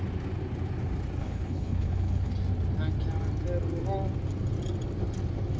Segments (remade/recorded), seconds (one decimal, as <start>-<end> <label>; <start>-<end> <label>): 0.0-1.2 recorded; 1.2-2.3 remade; 2.3-5.6 recorded